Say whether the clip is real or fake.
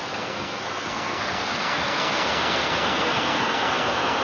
fake